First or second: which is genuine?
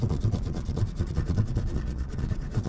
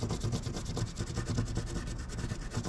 second